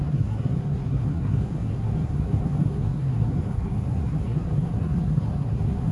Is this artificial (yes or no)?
yes